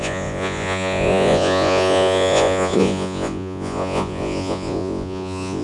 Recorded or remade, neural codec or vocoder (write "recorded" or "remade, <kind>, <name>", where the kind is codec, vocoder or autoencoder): remade, vocoder, Vocos